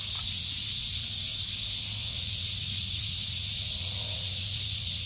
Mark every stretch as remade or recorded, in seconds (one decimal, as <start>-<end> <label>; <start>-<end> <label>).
0.0-1.3 remade; 1.3-2.0 recorded; 2.0-5.1 remade